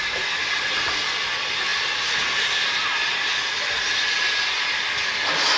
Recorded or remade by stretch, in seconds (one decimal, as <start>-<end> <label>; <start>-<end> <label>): 0.0-5.6 recorded